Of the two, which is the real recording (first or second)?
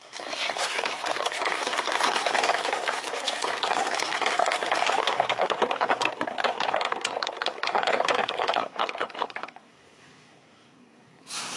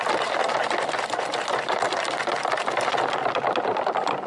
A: second